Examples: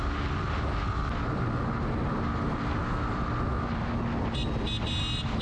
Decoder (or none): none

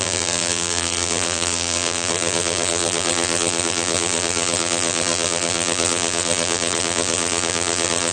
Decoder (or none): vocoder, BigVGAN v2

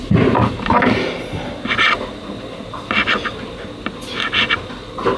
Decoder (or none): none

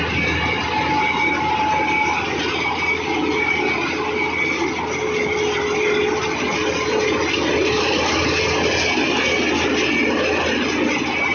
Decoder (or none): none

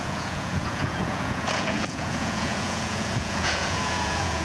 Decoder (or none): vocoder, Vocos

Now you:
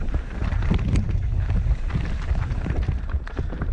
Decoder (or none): none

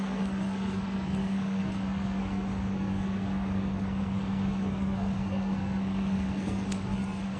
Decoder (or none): codec, SNAC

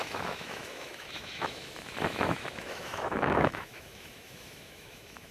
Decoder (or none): autoencoder, DAC-VAE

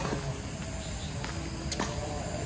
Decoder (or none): none